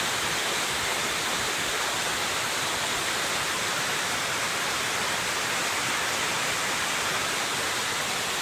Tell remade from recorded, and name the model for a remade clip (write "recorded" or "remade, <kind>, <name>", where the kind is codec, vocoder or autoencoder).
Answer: recorded